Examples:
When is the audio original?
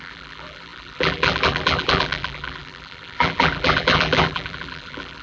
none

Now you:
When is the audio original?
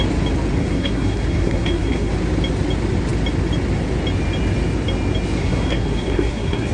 0.0-0.6; 2.1-5.4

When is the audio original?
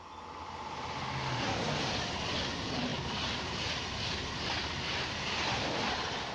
0.0-6.3